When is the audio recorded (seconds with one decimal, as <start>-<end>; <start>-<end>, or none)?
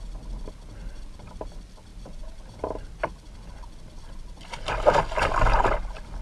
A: 0.0-6.2